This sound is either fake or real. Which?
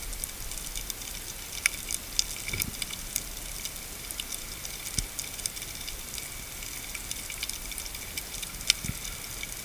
real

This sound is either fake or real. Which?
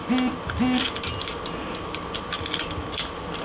real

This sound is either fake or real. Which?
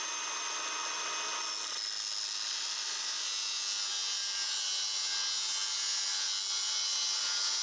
real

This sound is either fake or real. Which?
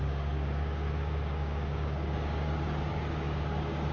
fake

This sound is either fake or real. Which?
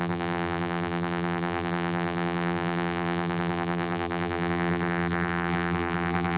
fake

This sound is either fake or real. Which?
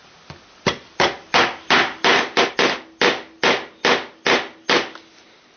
real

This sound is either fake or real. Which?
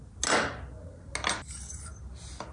real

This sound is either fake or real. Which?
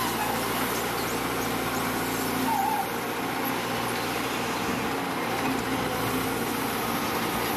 real